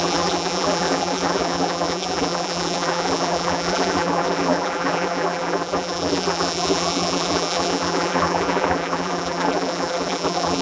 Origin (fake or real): fake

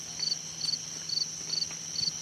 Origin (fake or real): real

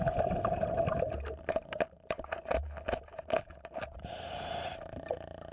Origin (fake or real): fake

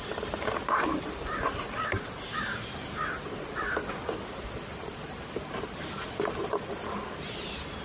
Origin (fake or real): real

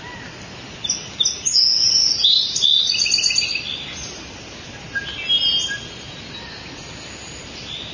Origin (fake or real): real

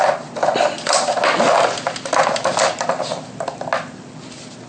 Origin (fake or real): real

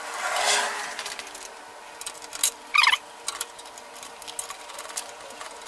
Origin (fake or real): real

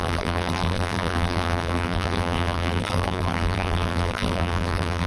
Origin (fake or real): fake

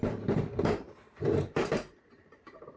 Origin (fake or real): fake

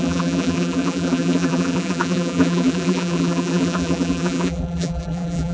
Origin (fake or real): fake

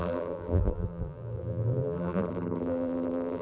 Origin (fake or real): fake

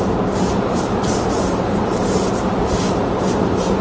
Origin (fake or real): fake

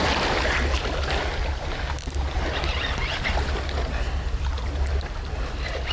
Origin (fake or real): real